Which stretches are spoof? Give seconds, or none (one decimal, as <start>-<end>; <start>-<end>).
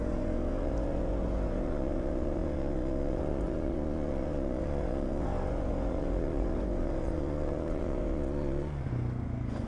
0.0-9.7